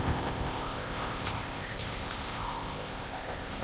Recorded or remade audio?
remade